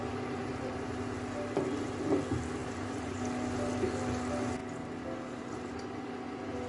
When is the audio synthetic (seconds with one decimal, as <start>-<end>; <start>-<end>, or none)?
0.4-1.0; 2.6-3.2